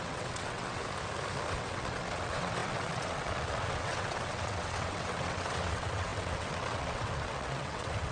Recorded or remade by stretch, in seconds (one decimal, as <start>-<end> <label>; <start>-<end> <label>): 0.0-0.8 remade; 0.8-1.5 recorded; 1.5-8.1 remade